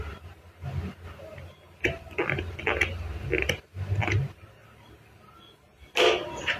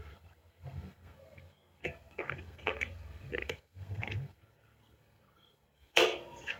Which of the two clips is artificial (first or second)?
second